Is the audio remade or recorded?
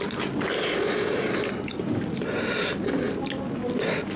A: recorded